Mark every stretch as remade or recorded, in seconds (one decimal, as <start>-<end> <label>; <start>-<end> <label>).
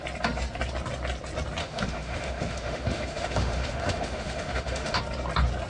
0.0-1.6 recorded; 1.6-5.0 remade; 5.0-5.7 recorded